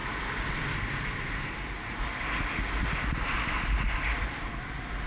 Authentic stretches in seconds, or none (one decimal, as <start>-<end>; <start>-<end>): 0.0-5.1